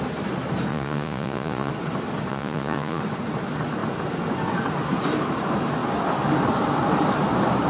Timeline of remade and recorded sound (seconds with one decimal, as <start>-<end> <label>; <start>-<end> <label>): 0.0-0.7 recorded; 0.7-1.7 remade; 1.7-2.3 recorded; 2.3-3.0 remade; 3.0-7.7 recorded